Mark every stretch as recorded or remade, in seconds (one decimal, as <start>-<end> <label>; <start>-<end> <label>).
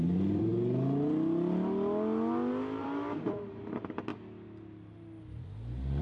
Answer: 0.0-0.5 remade; 0.5-2.8 recorded; 2.8-4.1 remade; 4.1-6.0 recorded